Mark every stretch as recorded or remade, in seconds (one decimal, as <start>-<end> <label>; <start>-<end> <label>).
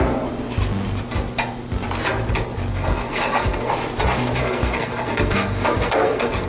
0.0-2.7 recorded; 2.7-3.7 remade; 3.7-4.4 recorded; 4.4-6.5 remade